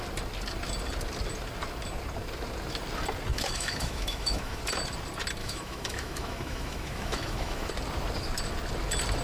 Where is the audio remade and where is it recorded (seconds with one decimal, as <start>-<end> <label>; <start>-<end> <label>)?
0.0-3.3 recorded; 3.3-4.6 remade; 4.6-5.4 recorded; 5.4-7.7 remade; 7.7-9.2 recorded